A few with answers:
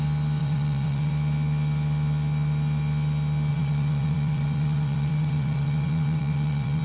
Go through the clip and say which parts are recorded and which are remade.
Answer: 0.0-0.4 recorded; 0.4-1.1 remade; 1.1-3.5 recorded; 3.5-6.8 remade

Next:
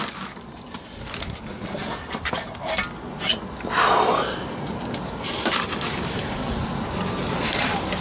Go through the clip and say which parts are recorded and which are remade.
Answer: 0.0-8.0 recorded

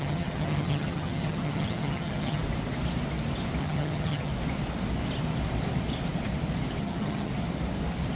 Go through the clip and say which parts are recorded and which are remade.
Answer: 0.0-2.4 remade; 2.4-3.6 recorded; 3.6-4.3 remade; 4.3-6.8 recorded; 6.8-7.3 remade; 7.3-8.2 recorded

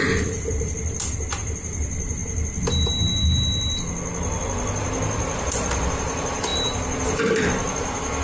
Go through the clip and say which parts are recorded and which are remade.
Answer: 0.0-2.2 remade; 2.2-5.4 recorded; 5.4-8.2 remade

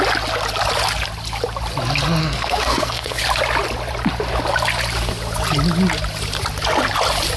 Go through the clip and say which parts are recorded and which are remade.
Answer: 0.0-2.2 recorded; 2.2-3.2 remade; 3.2-7.4 recorded

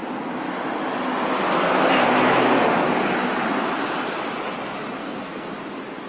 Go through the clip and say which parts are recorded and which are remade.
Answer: 0.0-5.0 recorded; 5.0-5.5 remade; 5.5-6.1 recorded